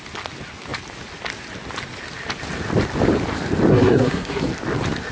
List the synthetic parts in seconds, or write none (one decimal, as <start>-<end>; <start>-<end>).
3.7-4.4